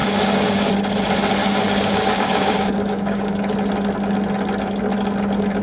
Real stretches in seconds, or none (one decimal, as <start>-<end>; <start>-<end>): 0.7-1.4; 3.4-5.6